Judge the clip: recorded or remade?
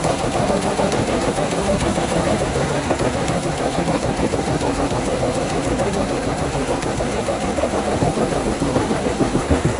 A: remade